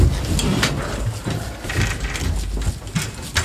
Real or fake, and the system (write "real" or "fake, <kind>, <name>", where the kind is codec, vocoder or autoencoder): real